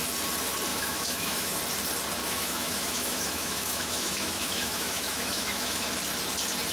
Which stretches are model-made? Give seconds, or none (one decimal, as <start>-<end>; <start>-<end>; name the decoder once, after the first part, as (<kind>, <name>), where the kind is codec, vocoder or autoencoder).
0.7-1.6 (autoencoder, DAC-VAE); 2.2-5.9